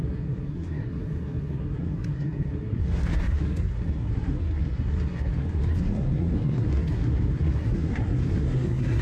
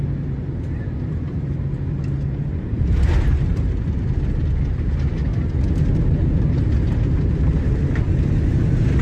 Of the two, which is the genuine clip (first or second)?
second